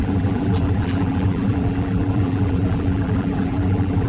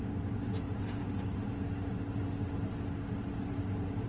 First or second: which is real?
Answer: second